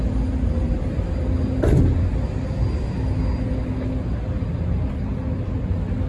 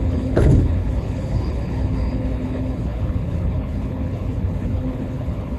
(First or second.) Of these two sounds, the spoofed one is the second